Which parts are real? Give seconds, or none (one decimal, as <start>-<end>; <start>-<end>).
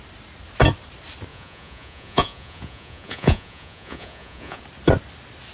0.0-1.3; 4.6-5.5